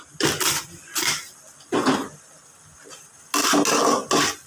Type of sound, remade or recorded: recorded